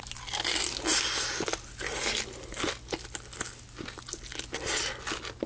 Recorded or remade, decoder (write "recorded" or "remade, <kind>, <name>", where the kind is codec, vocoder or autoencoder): recorded